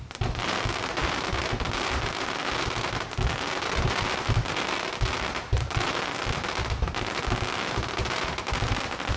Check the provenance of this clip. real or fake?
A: real